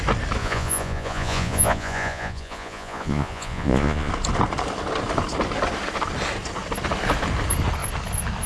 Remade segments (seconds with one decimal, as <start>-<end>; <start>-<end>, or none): 0.4-4.1

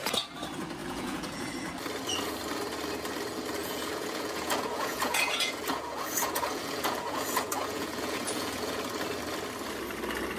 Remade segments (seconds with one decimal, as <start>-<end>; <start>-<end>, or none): 0.8-1.5; 3.6-8.8

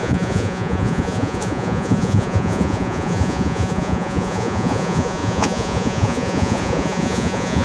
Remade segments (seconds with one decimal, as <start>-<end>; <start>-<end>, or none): 0.0-7.6

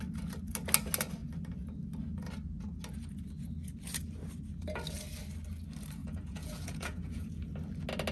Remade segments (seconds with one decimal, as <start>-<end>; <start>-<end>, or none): 6.0-7.5

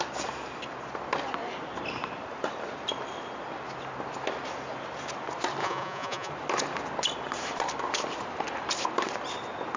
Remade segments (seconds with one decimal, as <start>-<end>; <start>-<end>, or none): 5.6-6.3

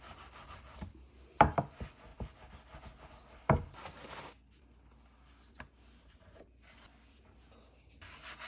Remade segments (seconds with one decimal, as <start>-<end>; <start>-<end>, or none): none

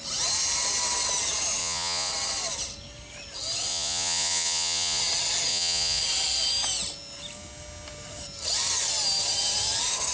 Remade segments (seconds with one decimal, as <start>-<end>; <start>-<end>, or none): 1.6-2.1; 3.7-5.0; 5.5-6.0